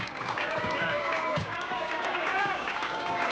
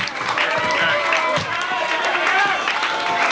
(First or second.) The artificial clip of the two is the first